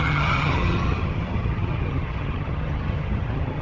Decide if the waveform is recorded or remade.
remade